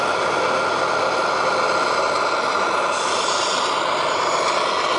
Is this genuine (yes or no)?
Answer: yes